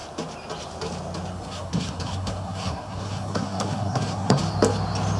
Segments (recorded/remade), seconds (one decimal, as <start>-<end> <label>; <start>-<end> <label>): 0.0-1.3 recorded; 1.3-4.4 remade; 4.4-5.2 recorded